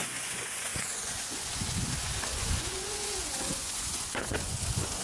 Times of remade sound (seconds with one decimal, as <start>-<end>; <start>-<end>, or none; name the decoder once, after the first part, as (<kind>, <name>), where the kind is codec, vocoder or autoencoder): 0.0-5.0 (vocoder, Vocos)